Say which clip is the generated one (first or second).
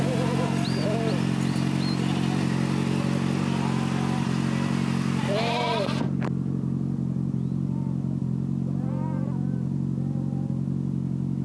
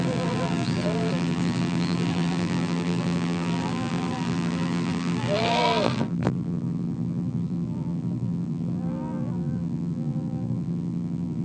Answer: second